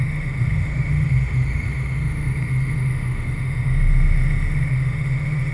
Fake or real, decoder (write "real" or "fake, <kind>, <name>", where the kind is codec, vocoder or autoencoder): fake, autoencoder, DAC-VAE